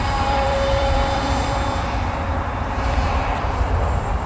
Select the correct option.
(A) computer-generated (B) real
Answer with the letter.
A